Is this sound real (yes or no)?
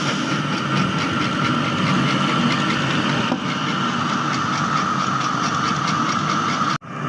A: yes